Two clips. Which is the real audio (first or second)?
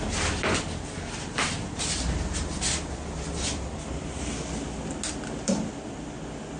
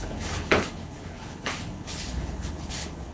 first